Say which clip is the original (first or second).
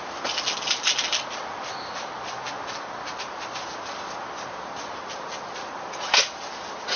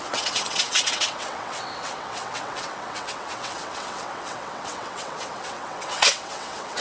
first